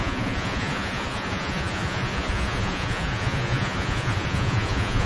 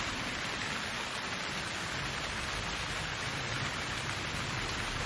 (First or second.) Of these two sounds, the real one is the second